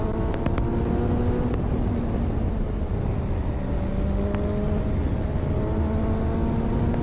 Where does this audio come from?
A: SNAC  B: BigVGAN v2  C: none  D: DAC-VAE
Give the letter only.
C